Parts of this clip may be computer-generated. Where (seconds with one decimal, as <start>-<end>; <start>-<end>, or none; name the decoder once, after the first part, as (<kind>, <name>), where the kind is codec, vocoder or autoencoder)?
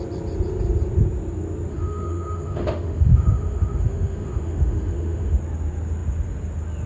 1.7-5.4 (autoencoder, DAC-VAE)